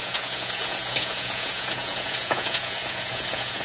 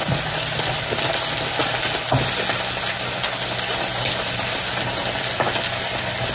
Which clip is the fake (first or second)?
first